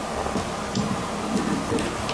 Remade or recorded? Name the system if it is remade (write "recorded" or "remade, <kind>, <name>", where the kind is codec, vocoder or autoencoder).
recorded